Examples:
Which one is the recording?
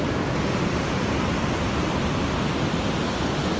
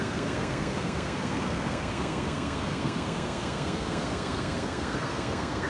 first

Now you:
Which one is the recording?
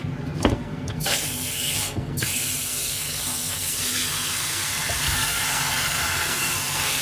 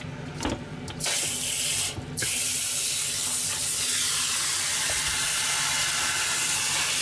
second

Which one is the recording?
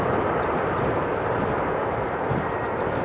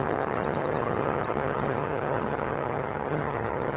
first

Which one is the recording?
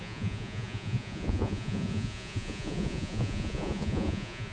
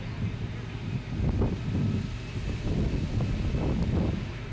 second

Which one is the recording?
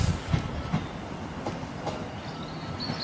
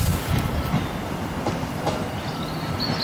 first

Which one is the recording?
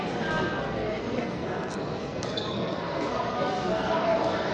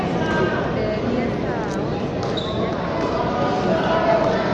second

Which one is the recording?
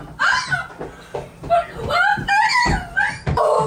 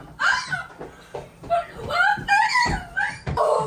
first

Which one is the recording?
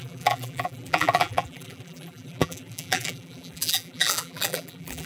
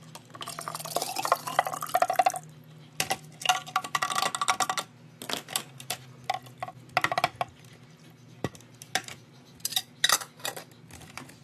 second